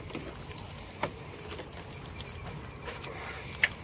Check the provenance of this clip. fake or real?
real